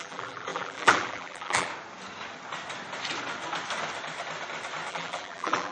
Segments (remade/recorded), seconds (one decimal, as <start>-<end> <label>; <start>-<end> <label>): 0.0-1.7 remade; 1.7-4.9 recorded; 4.9-5.7 remade